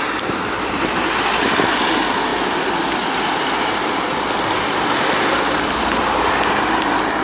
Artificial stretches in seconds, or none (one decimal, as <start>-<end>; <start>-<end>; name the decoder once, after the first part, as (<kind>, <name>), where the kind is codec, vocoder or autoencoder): none